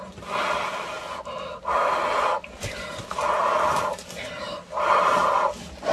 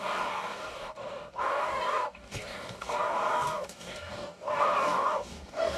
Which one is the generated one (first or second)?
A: second